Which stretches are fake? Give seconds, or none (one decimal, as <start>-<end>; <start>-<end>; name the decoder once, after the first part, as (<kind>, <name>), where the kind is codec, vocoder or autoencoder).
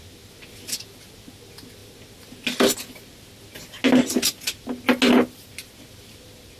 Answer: none